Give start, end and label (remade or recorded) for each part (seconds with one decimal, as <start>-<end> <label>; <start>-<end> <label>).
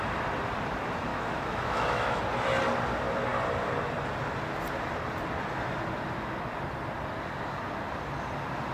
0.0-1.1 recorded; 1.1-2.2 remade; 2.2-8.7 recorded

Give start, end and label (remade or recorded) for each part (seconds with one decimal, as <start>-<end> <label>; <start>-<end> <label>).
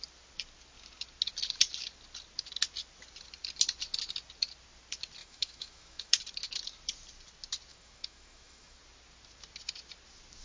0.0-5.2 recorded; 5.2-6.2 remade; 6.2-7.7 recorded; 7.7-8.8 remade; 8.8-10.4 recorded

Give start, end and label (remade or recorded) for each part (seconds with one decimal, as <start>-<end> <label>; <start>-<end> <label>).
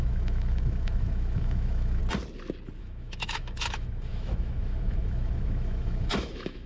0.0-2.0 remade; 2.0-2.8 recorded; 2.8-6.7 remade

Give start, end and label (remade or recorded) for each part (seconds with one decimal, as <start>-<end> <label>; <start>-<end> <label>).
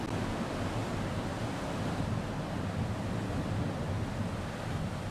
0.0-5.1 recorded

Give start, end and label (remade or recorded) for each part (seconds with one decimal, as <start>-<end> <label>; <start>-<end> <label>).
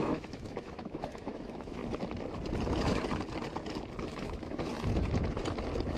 0.0-1.8 remade; 1.8-4.0 recorded; 4.0-4.7 remade; 4.7-6.0 recorded